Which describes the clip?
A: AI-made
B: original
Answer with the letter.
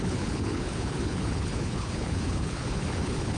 A